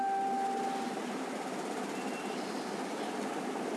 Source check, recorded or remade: recorded